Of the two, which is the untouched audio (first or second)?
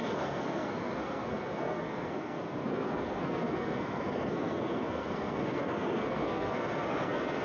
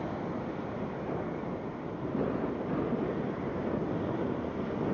second